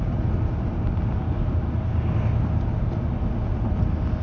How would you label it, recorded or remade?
recorded